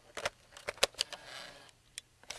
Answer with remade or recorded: recorded